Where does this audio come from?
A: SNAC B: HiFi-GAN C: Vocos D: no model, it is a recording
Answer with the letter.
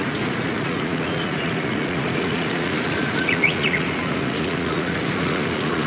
C